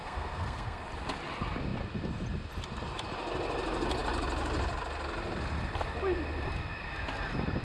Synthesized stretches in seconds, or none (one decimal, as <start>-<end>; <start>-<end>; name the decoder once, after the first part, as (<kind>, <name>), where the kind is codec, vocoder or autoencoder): 0.0-0.8 (codec, SNAC)